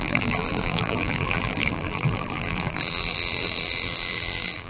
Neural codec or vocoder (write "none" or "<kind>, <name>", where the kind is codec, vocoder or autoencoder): vocoder, BigVGAN v2